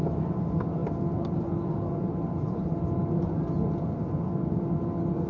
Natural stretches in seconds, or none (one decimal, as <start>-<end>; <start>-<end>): 0.0-5.3